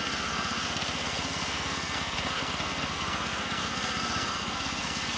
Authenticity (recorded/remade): remade